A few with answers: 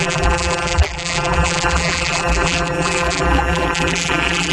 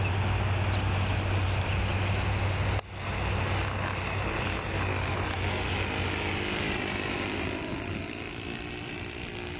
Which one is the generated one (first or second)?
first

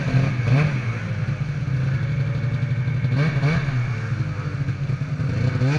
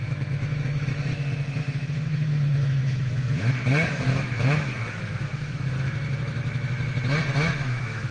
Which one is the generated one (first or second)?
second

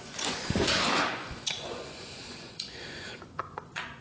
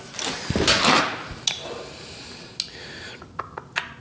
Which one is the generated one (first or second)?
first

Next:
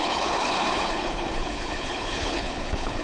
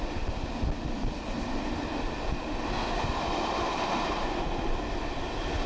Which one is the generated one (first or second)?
first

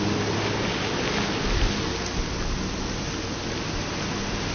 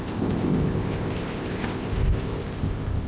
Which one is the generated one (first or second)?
second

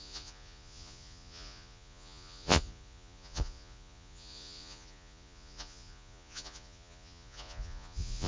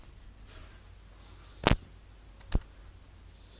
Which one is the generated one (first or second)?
first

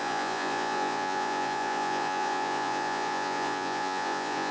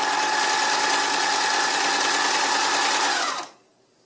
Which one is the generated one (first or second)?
first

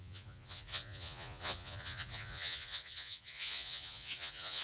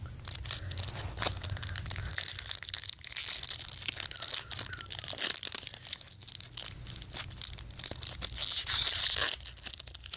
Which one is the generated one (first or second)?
first